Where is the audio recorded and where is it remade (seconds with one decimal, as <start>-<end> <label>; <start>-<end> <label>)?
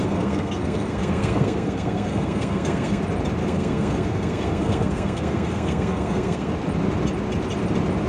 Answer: 0.0-3.0 remade; 3.0-3.4 recorded; 3.4-6.5 remade; 6.5-8.1 recorded